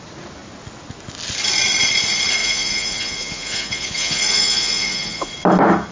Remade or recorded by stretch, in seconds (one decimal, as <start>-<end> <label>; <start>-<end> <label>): 0.0-2.4 recorded; 2.4-5.3 remade; 5.3-5.9 recorded